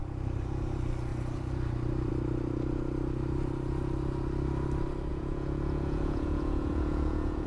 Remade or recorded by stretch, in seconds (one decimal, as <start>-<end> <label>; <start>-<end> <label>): 0.0-5.1 recorded; 5.1-7.5 remade